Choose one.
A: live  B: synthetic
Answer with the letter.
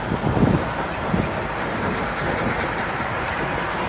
A